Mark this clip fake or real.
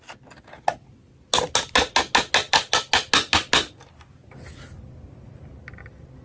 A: real